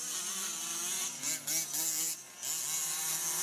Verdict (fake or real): real